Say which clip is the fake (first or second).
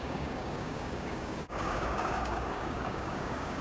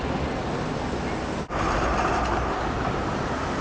first